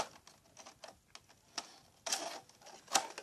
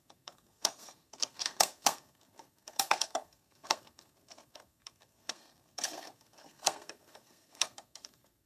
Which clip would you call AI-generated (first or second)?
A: second